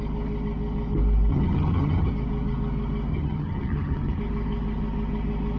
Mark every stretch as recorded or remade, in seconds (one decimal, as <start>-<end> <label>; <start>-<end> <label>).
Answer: 0.0-1.3 recorded; 1.3-2.1 remade; 2.1-3.1 recorded; 3.1-4.2 remade; 4.2-5.6 recorded